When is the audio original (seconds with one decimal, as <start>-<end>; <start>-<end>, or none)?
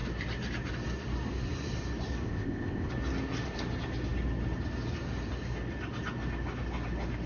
0.0-2.2; 2.9-7.3